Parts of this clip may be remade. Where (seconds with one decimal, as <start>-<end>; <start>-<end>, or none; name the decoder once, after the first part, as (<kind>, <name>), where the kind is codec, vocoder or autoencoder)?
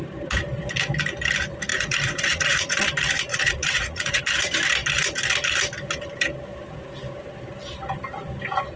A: 1.7-2.8 (vocoder, Vocos); 3.3-4.2